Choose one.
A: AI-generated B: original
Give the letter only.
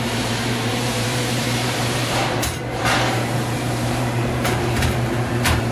A